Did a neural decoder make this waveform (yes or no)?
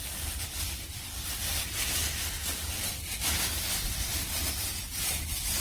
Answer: no